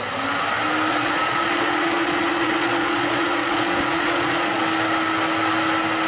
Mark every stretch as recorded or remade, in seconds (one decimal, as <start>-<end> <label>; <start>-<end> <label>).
0.0-0.9 recorded; 0.9-4.6 remade; 4.6-6.1 recorded